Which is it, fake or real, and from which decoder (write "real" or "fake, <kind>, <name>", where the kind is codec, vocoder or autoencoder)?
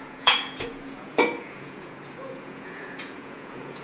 fake, vocoder, Vocos